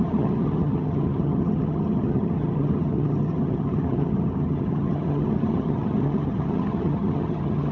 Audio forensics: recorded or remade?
remade